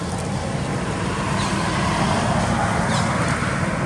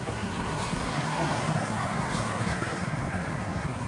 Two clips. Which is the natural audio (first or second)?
first